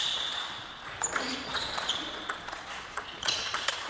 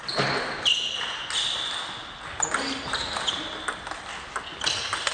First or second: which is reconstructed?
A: first